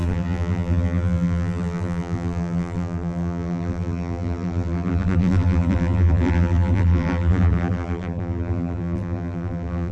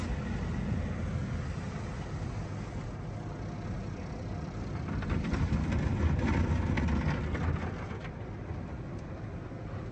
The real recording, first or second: second